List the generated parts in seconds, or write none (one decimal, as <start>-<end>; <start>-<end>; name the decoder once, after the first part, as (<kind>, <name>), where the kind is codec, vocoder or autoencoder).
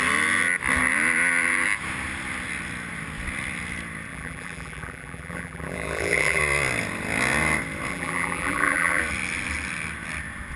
4.1-6.4 (vocoder, BigVGAN v2); 7.9-9.0